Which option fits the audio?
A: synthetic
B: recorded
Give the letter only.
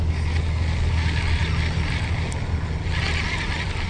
B